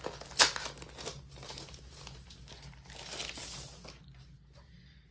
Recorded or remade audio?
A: recorded